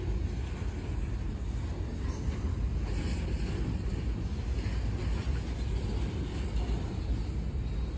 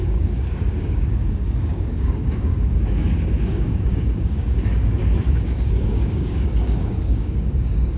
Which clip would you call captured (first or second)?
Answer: first